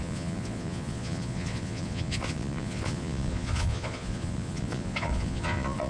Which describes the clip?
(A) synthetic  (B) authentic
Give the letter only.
A